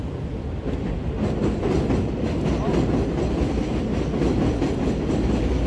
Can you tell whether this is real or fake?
real